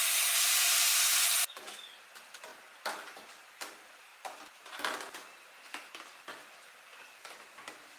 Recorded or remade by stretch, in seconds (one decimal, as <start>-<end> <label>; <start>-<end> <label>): 0.0-1.2 recorded; 1.2-2.5 remade; 2.5-3.3 recorded; 3.3-4.1 remade; 4.1-6.2 recorded; 6.2-8.0 remade